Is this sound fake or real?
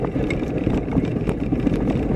fake